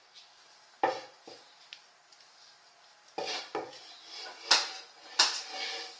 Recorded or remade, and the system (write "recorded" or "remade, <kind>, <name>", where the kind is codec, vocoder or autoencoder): recorded